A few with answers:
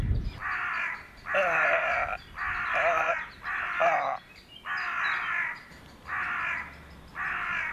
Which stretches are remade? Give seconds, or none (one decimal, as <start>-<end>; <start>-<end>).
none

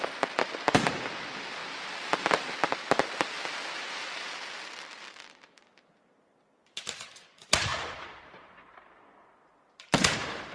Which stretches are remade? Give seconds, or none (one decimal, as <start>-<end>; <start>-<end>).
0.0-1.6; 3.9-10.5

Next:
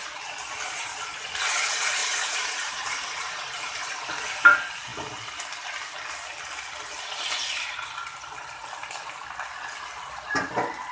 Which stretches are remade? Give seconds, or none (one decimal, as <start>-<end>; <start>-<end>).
2.0-3.8

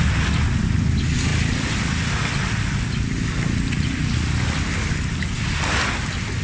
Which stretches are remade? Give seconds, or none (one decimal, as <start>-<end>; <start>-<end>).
1.3-2.1